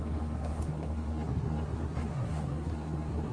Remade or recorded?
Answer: remade